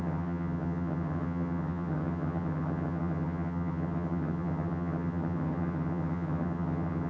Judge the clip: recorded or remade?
remade